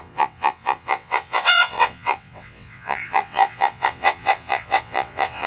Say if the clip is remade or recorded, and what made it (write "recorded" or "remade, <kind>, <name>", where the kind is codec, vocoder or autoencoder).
remade, vocoder, WaveNeXt